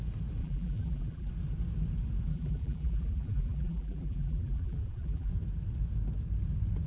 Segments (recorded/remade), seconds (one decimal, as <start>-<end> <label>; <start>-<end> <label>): 0.0-0.4 recorded; 0.4-1.3 remade; 1.3-2.3 recorded; 2.3-5.3 remade; 5.3-6.9 recorded